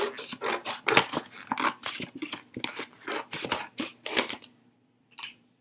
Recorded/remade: recorded